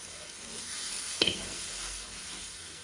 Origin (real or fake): fake